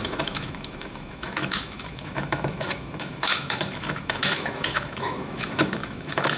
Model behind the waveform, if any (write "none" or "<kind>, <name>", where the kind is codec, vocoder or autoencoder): autoencoder, DAC-VAE